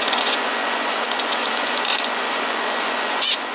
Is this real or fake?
fake